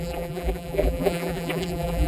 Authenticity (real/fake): fake